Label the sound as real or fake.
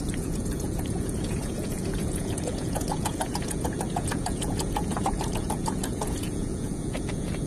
fake